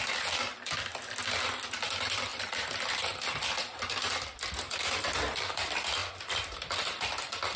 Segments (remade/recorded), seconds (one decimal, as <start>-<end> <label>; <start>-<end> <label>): 0.0-6.0 recorded; 6.0-7.6 remade